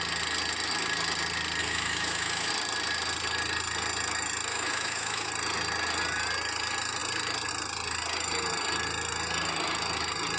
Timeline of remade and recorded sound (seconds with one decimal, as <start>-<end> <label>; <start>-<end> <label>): 0.0-1.6 recorded; 1.6-2.5 remade; 2.5-4.5 recorded; 4.5-5.3 remade; 5.3-10.4 recorded